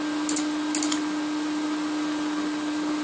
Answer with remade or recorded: recorded